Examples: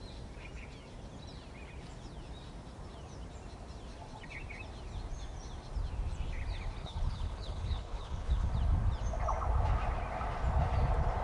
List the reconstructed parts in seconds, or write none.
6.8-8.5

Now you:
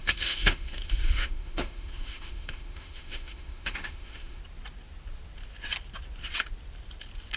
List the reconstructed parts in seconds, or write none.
0.0-4.4